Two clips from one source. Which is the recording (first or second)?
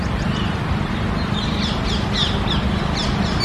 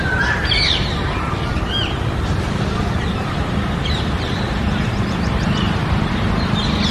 first